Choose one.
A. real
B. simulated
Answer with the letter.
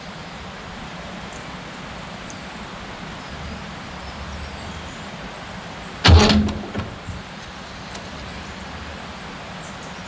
A